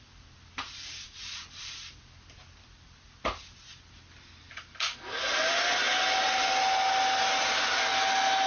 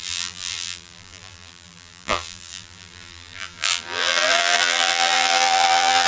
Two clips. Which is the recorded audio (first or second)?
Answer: first